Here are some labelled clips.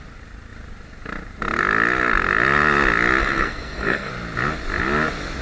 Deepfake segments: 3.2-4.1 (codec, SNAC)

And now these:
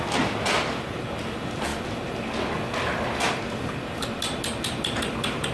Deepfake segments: none

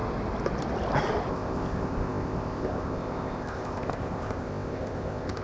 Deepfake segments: 1.3-5.4 (codec, ZipCodec)

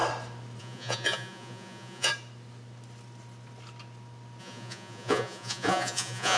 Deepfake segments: 0.6-2.1 (vocoder, Vocos); 4.4-6.4

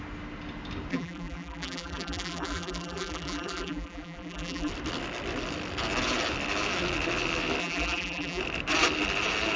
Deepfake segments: 0.9-4.7 (vocoder, BigVGAN v2); 7.6-8.4